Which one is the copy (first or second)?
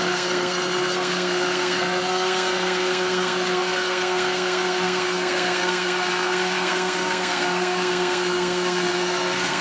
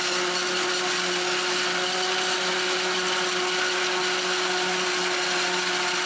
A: first